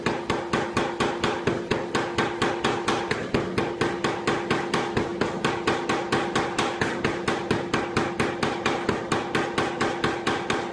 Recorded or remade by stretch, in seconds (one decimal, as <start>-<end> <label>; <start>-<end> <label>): 0.0-10.7 recorded